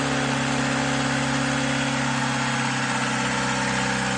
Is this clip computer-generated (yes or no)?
no